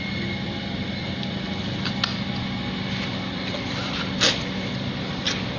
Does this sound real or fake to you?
real